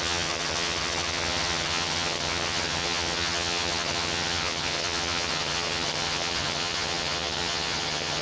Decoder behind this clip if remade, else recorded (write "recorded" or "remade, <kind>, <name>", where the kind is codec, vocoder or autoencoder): remade, vocoder, HiFi-GAN